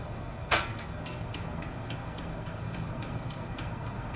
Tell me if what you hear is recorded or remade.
remade